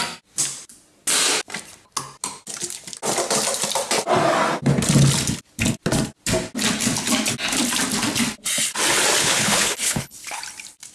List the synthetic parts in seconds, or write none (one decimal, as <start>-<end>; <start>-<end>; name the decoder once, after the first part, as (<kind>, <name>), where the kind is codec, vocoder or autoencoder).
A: 9.2-10.4 (codec, HILCodec)